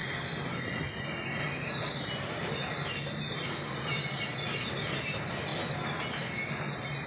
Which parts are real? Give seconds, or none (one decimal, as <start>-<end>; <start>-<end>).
0.0-7.1